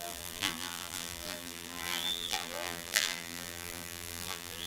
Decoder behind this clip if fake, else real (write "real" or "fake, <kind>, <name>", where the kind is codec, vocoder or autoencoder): fake, vocoder, BigVGAN v2